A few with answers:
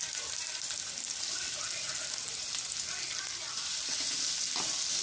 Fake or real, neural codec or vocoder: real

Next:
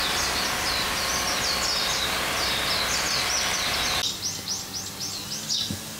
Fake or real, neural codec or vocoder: real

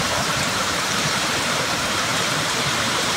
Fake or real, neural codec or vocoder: fake, vocoder, BigVGAN v2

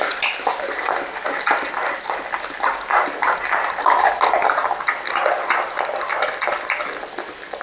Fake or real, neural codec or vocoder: real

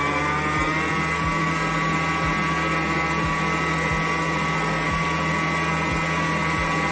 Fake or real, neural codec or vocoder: real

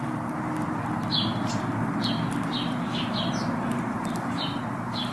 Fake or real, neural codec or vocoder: fake, vocoder, BigVGAN v2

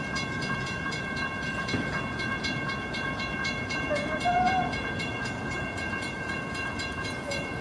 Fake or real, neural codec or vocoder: fake, vocoder, Vocos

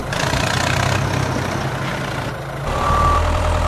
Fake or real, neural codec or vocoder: fake, vocoder, BigVGAN v2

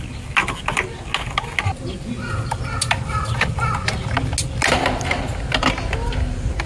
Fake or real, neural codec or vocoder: real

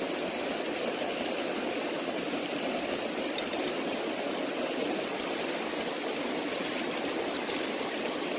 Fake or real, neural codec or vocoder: real